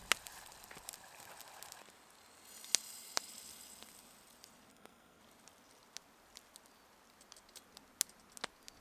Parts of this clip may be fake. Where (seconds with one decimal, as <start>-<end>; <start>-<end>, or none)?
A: 4.7-5.2